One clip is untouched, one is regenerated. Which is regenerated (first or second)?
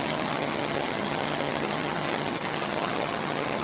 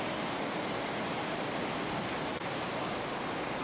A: first